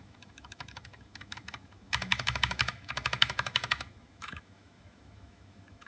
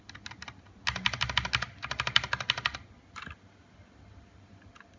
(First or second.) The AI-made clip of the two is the first